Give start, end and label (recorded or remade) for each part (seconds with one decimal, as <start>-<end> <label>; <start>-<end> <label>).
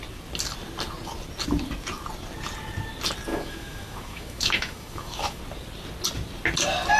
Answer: 0.0-3.3 recorded; 3.3-5.4 remade; 5.4-7.0 recorded